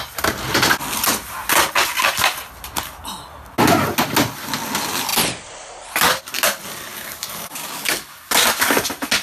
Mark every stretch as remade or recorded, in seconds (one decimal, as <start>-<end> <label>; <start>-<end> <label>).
0.0-6.9 recorded; 6.9-8.3 remade; 8.3-9.2 recorded